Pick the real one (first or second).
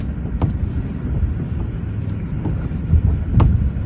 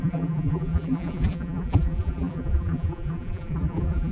first